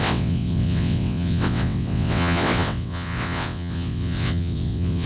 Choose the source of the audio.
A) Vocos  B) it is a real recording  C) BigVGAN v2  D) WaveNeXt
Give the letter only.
D